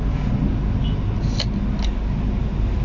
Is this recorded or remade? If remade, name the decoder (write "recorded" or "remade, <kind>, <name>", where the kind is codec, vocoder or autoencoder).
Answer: recorded